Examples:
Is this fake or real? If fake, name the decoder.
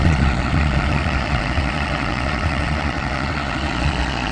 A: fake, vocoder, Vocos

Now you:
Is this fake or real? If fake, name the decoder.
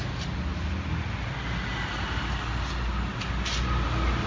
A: real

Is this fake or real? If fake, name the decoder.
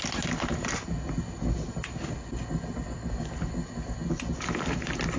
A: real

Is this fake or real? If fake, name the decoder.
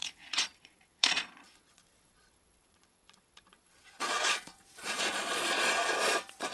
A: fake, vocoder, Vocos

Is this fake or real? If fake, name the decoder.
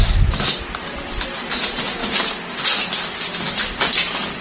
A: real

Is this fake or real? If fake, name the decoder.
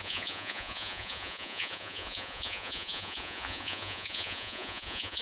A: fake, vocoder, Vocos